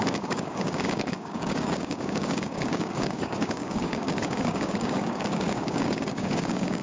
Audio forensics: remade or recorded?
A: remade